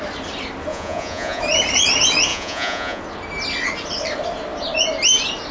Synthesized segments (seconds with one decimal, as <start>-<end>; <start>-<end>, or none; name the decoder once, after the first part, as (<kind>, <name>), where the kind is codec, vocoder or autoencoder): 0.7-1.4 (vocoder, Vocos); 2.3-3.0